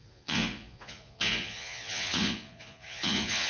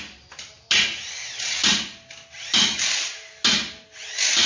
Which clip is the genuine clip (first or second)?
second